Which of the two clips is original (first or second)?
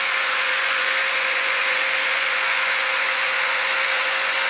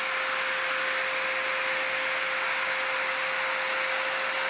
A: second